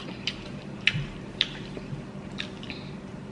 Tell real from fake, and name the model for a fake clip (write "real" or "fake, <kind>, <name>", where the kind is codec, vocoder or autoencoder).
fake, vocoder, BigVGAN v2